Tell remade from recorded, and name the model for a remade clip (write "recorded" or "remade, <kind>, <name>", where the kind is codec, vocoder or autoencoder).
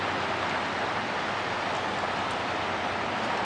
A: recorded